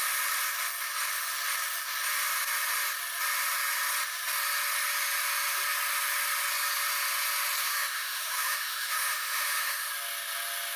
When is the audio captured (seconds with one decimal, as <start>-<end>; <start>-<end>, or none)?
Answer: 0.0-7.6; 9.9-10.8